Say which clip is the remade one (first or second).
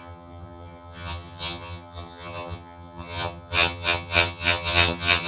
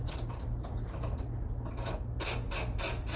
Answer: first